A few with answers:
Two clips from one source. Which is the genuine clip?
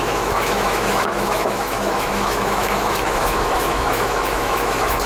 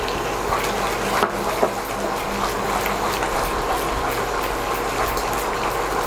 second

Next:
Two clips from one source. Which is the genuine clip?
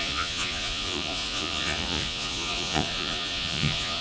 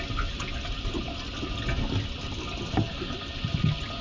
second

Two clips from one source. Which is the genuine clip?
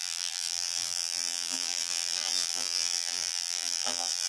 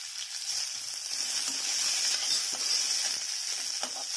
second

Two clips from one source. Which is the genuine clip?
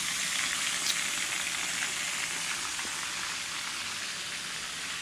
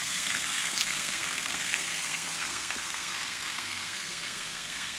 first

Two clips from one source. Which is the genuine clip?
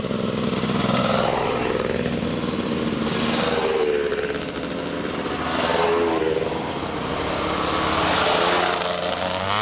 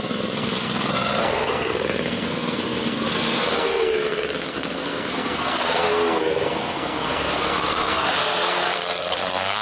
first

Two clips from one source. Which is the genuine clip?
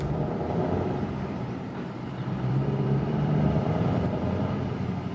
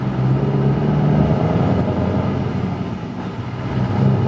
second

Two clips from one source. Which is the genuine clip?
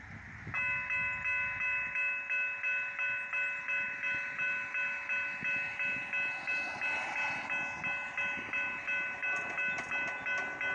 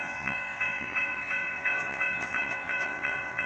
first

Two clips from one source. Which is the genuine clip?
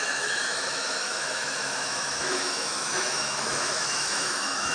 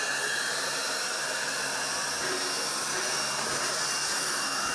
second